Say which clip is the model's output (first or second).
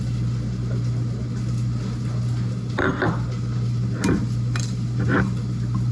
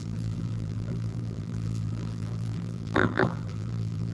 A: second